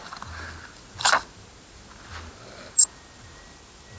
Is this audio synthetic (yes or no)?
no